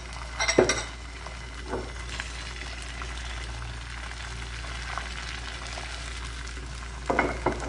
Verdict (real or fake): real